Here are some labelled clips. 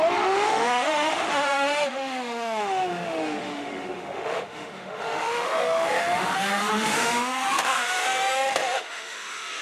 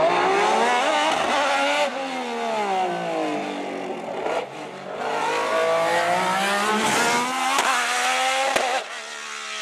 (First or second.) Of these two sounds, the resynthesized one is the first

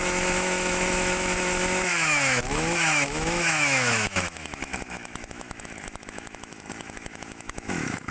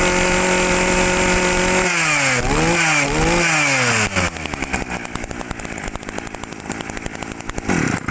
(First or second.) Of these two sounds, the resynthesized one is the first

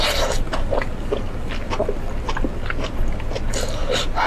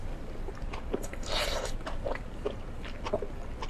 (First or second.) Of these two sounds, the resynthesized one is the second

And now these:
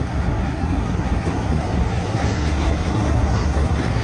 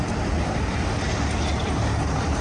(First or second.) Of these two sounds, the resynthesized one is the first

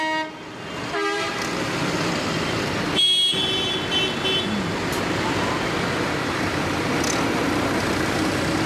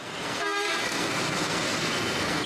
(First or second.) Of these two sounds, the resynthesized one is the second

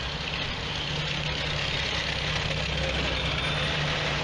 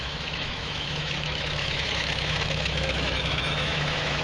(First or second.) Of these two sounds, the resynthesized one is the second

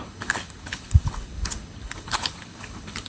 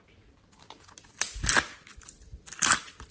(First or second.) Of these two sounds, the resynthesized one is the first